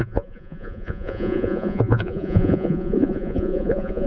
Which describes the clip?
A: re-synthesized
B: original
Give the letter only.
A